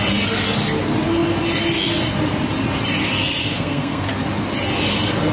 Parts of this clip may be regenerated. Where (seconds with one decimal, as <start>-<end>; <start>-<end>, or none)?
3.4-4.1